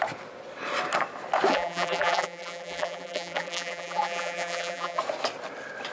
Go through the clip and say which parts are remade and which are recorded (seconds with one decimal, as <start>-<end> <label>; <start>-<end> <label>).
0.0-1.5 recorded; 1.5-5.0 remade; 5.0-5.9 recorded

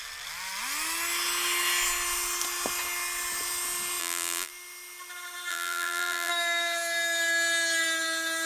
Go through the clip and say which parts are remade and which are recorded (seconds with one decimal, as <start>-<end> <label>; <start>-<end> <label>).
0.0-4.0 recorded; 4.0-4.5 remade; 4.5-5.5 recorded; 5.5-6.3 remade; 6.3-8.5 recorded

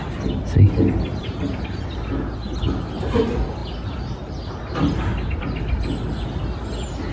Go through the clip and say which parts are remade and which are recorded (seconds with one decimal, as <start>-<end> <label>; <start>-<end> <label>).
0.0-1.2 recorded; 1.2-1.9 remade; 1.9-7.1 recorded

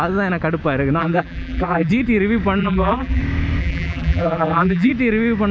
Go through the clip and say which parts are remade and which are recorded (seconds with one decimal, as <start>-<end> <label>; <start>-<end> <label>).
0.0-1.0 recorded; 1.0-1.9 remade; 1.9-2.6 recorded; 2.6-3.2 remade; 3.2-3.6 recorded; 3.6-4.9 remade; 4.9-5.5 recorded

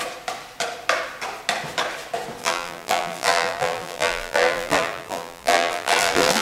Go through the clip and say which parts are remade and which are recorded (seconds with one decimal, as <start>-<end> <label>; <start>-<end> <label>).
0.0-2.4 recorded; 2.4-6.4 remade